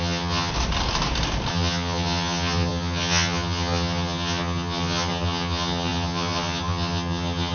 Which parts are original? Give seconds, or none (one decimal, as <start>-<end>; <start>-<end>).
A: 0.5-1.5